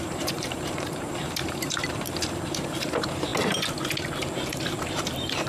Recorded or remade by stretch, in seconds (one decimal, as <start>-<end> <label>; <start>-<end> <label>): 0.0-3.3 remade; 3.3-4.2 recorded; 4.2-5.5 remade